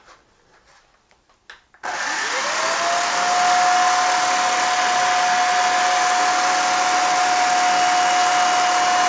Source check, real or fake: real